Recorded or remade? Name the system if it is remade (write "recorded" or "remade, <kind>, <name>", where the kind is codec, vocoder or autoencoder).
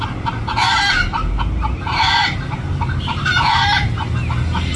recorded